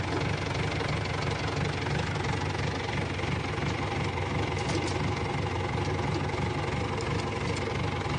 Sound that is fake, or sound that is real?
real